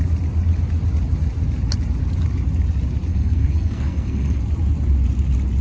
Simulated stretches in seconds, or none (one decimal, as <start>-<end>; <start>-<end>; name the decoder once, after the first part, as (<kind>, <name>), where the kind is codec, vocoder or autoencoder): 3.1-4.4 (codec, SNAC)